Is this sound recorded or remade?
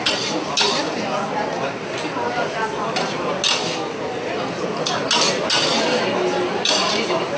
recorded